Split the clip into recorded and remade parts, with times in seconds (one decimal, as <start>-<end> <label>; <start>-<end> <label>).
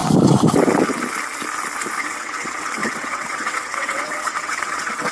0.0-2.0 recorded; 2.0-5.1 remade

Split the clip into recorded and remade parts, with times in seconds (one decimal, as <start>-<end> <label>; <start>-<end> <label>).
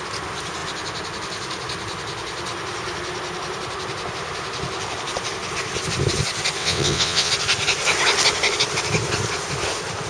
0.0-6.6 recorded; 6.6-7.3 remade; 7.3-10.1 recorded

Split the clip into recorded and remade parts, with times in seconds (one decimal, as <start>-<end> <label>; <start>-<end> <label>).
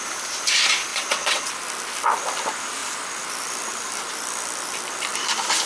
0.0-0.9 recorded; 0.9-1.5 remade; 1.5-5.7 recorded